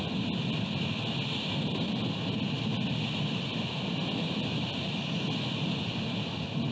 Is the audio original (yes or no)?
yes